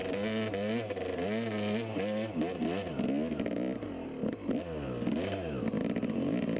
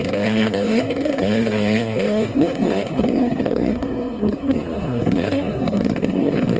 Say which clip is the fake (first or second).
second